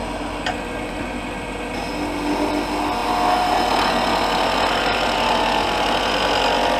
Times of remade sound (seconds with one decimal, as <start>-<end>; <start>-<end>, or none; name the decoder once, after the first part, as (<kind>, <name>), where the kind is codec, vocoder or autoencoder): none